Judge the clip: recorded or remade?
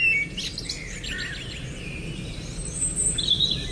recorded